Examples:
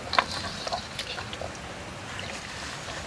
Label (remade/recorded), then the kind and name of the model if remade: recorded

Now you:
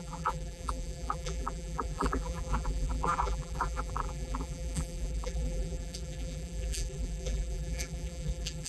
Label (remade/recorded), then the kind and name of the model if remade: remade, vocoder, BigVGAN v2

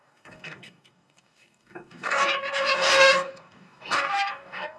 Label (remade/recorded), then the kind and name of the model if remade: remade, codec, DAC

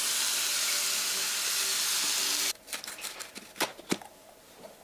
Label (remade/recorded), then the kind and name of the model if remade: recorded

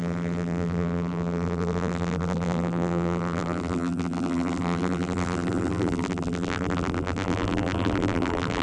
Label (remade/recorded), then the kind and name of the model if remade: remade, vocoder, BigVGAN v2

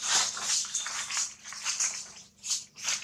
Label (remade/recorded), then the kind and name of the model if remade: recorded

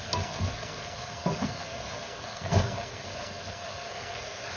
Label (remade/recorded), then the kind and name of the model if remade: remade, codec, SNAC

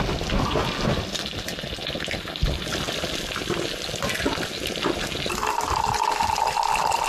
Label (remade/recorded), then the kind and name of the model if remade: recorded